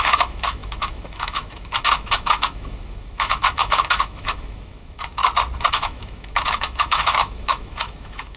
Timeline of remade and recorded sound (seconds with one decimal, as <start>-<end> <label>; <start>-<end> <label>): 0.0-5.2 remade; 5.2-5.7 recorded; 5.7-8.4 remade